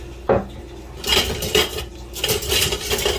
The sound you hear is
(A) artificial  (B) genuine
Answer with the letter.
B